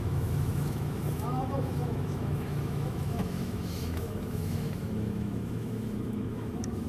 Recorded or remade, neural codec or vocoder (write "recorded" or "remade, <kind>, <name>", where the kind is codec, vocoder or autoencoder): remade, autoencoder, DAC-VAE